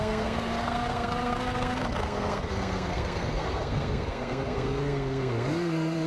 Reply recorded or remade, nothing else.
remade